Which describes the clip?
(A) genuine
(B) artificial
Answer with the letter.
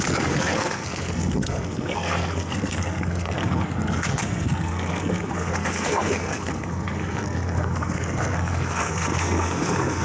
B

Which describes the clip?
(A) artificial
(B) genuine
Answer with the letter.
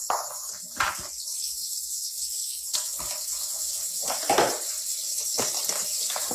B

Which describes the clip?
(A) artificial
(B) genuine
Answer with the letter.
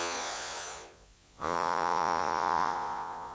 A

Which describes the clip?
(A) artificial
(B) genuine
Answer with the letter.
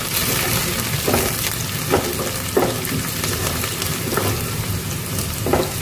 B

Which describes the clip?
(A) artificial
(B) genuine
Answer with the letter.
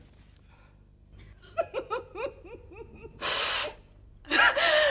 B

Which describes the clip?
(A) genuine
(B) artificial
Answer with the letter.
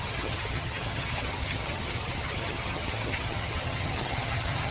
B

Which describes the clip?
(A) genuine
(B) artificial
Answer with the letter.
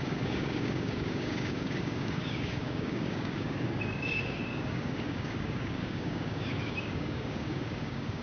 B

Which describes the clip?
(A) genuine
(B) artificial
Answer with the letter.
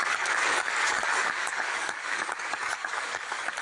B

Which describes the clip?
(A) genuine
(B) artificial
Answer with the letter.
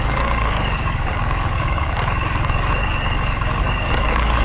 B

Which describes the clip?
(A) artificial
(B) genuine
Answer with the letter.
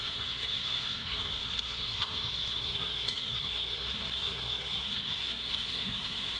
A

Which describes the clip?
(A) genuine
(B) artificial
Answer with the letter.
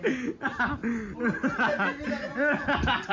A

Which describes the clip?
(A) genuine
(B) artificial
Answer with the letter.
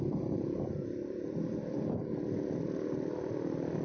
A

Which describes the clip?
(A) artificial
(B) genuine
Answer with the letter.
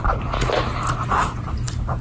B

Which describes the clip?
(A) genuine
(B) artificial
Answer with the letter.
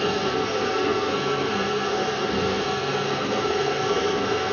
B